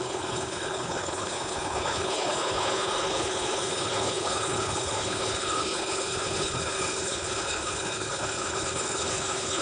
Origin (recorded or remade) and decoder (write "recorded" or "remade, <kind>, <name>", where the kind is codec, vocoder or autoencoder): remade, codec, HILCodec